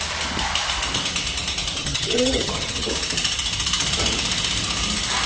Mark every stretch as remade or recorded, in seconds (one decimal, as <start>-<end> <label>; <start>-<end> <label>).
0.0-1.8 recorded; 1.8-2.9 remade; 2.9-5.3 recorded